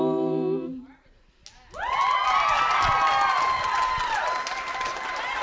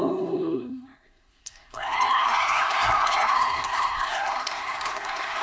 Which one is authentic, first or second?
first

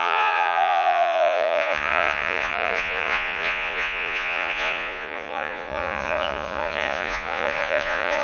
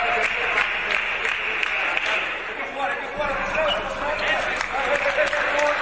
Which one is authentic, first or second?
second